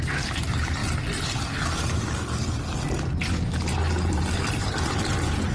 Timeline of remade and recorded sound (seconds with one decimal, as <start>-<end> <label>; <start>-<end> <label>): 0.0-5.5 recorded